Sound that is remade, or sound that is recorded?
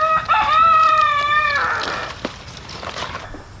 recorded